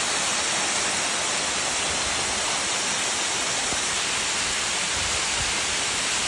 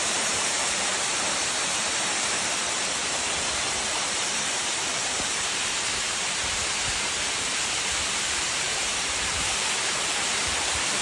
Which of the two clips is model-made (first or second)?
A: second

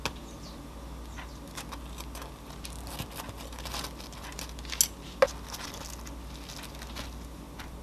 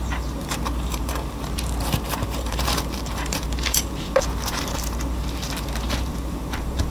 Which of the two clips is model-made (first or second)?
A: second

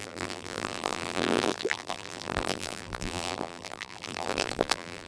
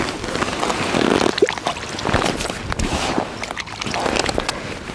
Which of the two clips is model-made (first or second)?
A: first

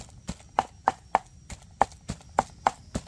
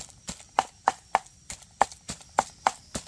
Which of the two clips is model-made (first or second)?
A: second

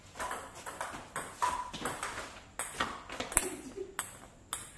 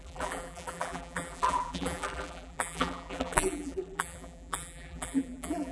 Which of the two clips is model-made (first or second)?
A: second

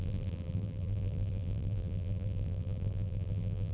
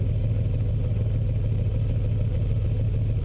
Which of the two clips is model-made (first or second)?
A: first